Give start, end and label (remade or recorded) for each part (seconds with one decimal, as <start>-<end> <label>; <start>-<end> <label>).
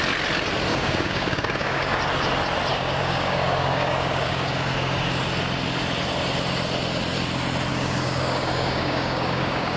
0.0-0.7 recorded; 0.7-2.0 remade; 2.0-2.7 recorded; 2.7-5.2 remade; 5.2-7.7 recorded; 7.7-9.8 remade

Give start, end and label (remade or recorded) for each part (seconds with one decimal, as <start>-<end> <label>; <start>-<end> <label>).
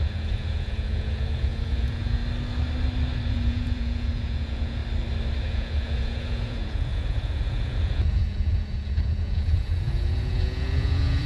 0.0-2.2 remade; 2.2-3.3 recorded; 3.3-4.8 remade; 4.8-5.4 recorded; 5.4-11.3 remade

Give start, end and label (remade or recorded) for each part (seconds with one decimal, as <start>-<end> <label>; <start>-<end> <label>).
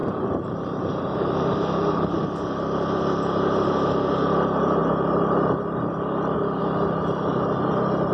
0.0-2.1 remade; 2.1-8.1 recorded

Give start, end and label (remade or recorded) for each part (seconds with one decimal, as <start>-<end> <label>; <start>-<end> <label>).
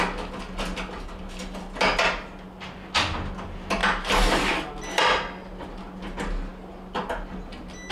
0.0-7.9 recorded